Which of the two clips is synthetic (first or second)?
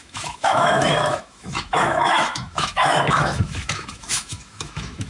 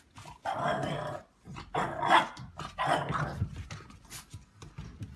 first